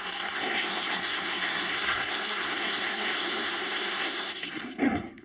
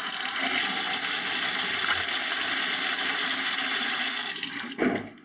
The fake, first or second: first